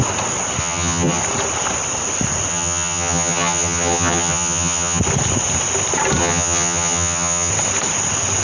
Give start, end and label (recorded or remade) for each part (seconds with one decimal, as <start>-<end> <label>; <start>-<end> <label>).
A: 0.0-0.6 recorded; 0.6-1.2 remade; 1.2-2.5 recorded; 2.5-5.0 remade; 5.0-6.2 recorded; 6.2-7.5 remade; 7.5-8.4 recorded

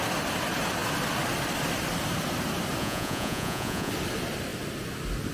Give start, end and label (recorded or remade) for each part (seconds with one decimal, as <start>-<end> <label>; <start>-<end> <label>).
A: 0.0-2.8 recorded; 2.8-3.9 remade; 3.9-5.3 recorded